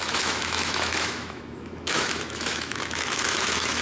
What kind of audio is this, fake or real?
fake